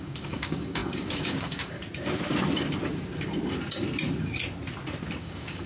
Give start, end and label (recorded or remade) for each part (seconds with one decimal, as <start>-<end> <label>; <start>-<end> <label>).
0.0-1.8 remade; 1.8-5.2 recorded; 5.2-5.7 remade